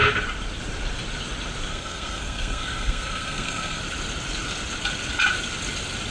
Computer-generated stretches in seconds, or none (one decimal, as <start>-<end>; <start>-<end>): 1.7-3.8